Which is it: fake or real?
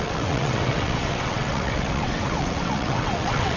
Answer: fake